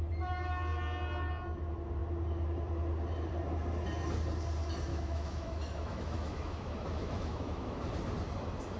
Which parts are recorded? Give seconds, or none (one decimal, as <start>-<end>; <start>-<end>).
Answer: 0.0-4.9; 7.8-8.8